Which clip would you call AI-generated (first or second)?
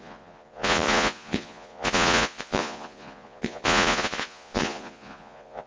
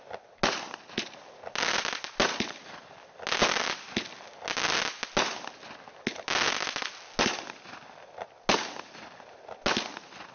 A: first